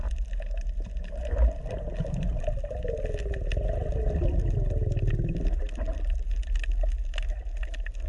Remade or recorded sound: recorded